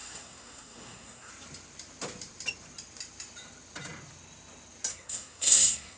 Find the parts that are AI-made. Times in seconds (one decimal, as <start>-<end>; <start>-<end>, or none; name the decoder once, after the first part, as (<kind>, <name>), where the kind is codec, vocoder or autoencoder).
0.0-1.3 (codec, SNAC); 4.9-6.0